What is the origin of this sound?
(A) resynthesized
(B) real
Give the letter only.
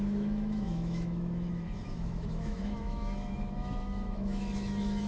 A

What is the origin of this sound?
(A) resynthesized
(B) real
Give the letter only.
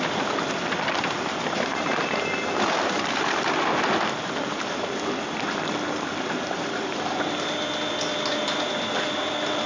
B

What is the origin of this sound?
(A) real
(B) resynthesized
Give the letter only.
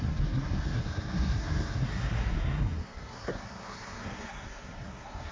B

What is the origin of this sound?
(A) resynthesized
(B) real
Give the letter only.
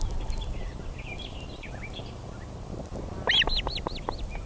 B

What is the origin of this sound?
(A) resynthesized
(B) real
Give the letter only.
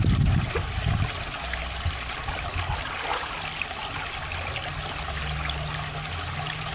B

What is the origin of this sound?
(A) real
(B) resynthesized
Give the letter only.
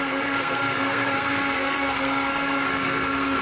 B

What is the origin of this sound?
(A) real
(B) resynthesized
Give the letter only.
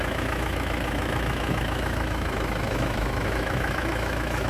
B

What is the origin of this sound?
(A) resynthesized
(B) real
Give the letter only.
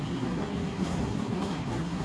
A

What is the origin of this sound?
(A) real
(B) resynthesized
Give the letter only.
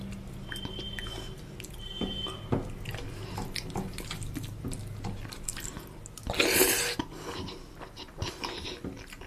A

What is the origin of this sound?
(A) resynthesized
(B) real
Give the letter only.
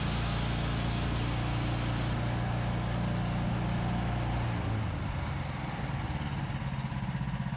B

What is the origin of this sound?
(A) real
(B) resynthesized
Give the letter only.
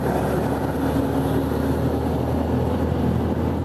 A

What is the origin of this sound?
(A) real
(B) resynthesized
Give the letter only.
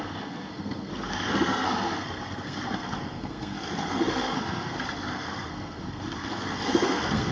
B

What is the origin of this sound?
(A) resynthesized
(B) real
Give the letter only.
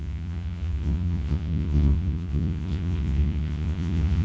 A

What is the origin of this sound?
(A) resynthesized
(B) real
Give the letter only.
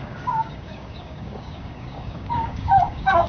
A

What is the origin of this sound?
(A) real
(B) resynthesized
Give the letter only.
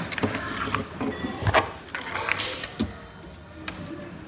A